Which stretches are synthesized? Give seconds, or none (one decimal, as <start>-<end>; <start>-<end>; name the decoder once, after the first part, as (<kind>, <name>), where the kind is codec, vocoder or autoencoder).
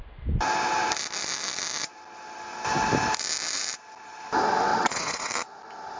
4.7-5.3 (vocoder, WaveNeXt)